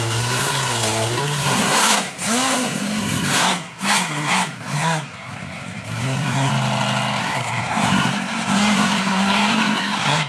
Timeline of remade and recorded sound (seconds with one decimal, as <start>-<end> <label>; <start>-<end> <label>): 0.0-6.5 remade; 6.5-7.2 recorded; 7.2-10.3 remade